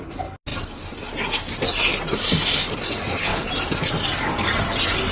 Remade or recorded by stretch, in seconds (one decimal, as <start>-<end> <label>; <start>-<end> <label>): 0.0-3.3 recorded; 3.3-3.9 remade; 3.9-5.1 recorded